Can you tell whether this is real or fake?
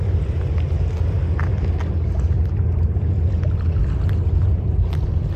real